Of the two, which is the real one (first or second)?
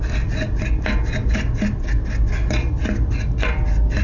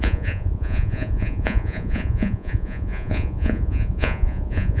first